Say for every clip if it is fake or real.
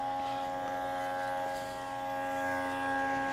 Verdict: real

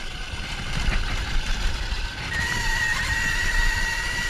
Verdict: fake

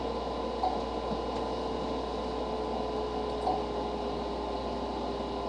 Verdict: real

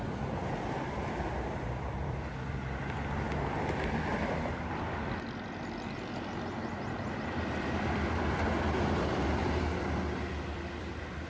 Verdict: fake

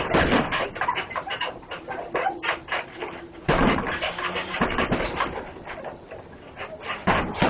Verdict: fake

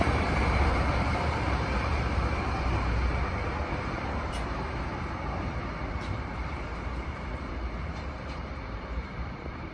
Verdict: fake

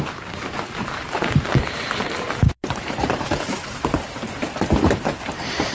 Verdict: fake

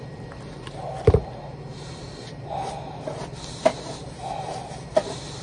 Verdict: fake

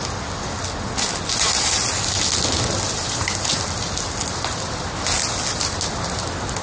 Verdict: real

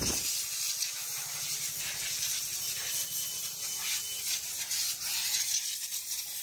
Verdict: real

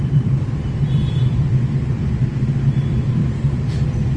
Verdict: fake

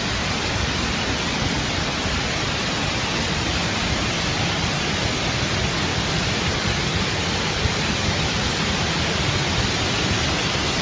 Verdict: real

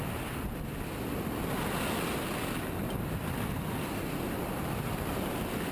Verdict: real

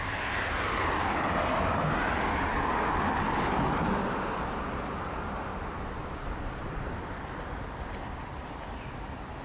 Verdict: real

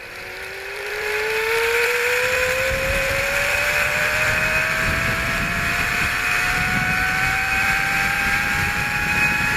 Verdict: fake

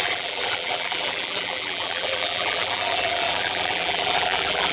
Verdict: fake